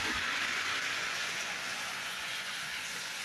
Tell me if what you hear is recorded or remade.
remade